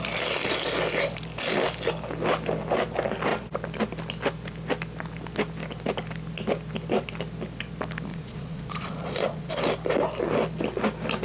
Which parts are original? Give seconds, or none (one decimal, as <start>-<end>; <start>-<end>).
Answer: 0.0-8.1; 9.5-11.2

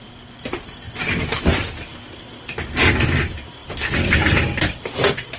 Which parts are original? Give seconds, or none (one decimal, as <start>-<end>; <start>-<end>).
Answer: 0.0-5.4

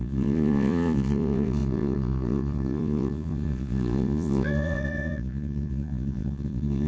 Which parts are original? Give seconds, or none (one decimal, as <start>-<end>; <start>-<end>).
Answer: none